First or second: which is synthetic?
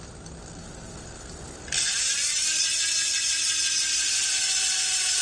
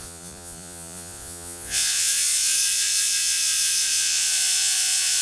second